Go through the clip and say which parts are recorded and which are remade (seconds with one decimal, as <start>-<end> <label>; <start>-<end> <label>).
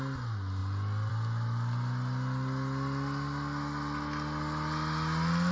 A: 0.0-5.5 recorded